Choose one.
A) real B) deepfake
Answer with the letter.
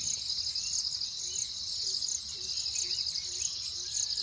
A